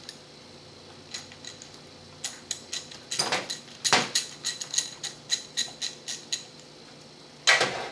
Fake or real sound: real